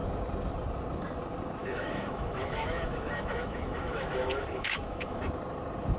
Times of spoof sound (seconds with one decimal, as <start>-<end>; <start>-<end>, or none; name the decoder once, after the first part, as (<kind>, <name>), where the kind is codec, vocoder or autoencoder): 1.6-5.2 (autoencoder, DAC-VAE)